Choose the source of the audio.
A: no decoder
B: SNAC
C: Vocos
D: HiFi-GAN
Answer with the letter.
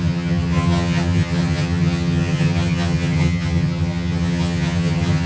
D